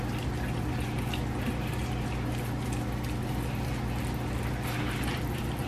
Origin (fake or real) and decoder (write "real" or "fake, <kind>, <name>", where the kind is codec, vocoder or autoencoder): real